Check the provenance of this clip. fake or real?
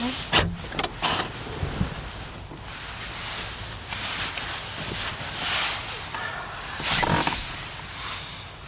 real